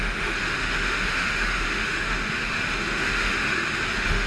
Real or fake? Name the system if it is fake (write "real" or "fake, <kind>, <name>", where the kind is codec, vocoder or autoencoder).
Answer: fake, autoencoder, DAC-VAE